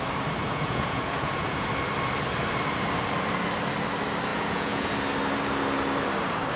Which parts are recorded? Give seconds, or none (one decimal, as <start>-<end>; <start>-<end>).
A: 0.0-0.4; 1.7-4.3; 4.9-6.6